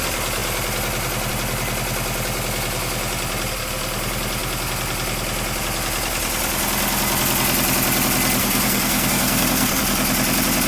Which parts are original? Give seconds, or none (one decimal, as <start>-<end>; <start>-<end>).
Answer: 0.0-8.4; 9.8-10.7